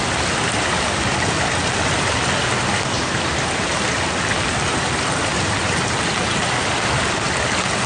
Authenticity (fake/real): real